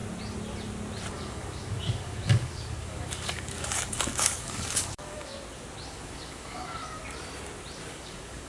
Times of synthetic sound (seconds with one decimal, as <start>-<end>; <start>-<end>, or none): 1.1-5.3; 5.9-6.8; 7.9-8.5

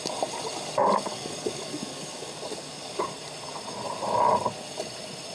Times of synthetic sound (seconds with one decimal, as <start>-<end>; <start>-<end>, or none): 1.1-3.0

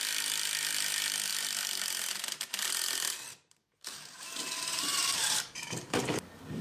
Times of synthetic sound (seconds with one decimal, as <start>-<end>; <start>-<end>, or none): 3.6-6.6

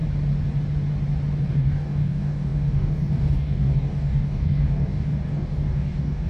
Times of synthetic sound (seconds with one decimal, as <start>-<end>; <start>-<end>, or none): 1.5-6.3